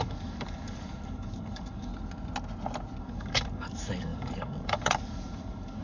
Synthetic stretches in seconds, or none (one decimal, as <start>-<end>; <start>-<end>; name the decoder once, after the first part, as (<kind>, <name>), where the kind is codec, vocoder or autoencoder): 0.0-1.9 (codec, DAC); 3.0-5.8